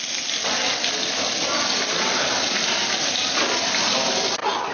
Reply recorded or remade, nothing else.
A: recorded